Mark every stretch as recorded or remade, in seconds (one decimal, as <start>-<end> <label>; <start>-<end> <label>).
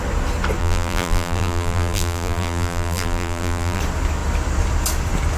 0.0-0.6 recorded; 0.6-3.8 remade; 3.8-5.4 recorded